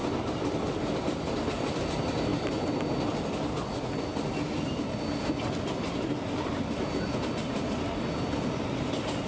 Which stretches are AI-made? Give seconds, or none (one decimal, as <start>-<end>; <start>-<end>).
none